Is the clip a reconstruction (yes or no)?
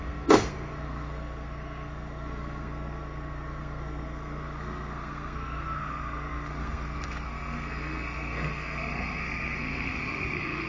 yes